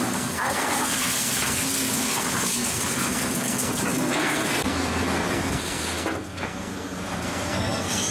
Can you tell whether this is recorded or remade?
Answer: remade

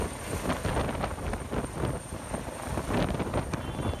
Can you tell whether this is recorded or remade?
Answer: recorded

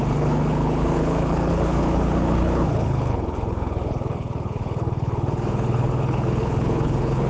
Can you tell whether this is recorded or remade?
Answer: remade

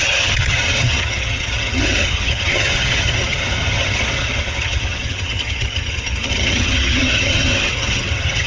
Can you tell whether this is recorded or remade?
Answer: remade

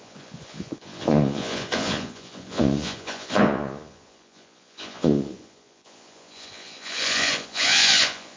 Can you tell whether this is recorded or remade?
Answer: remade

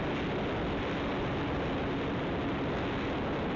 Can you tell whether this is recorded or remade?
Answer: recorded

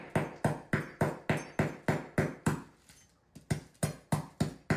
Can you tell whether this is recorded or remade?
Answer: recorded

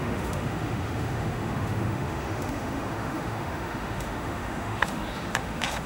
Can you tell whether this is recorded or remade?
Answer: remade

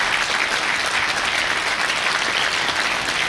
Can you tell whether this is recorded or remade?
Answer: recorded